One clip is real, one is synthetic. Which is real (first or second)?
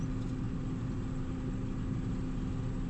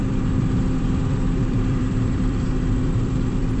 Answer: first